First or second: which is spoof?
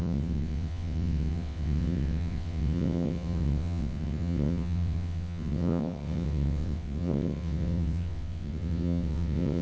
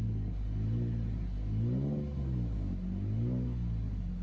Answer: first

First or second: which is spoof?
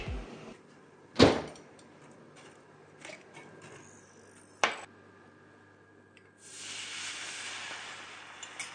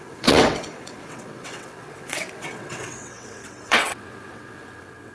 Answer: second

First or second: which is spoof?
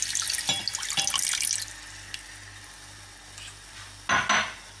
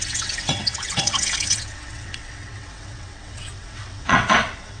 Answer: second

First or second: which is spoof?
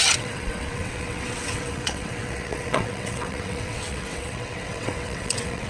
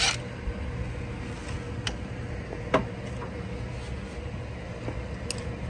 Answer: first